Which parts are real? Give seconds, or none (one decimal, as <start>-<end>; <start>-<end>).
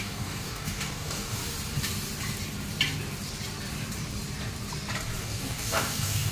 1.4-5.2